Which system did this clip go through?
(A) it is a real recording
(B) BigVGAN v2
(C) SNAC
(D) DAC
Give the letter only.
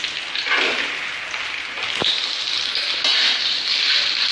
A